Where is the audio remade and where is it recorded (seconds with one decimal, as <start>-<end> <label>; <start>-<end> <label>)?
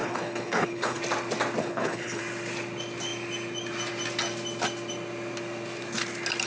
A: 0.0-1.0 remade; 1.0-1.6 recorded; 1.6-2.2 remade; 2.2-6.5 recorded